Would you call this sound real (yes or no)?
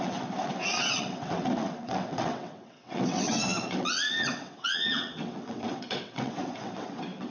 no